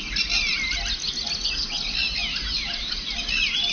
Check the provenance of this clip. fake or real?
real